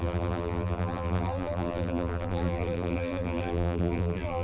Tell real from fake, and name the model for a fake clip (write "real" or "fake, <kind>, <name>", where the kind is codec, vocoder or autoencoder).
fake, vocoder, BigVGAN v2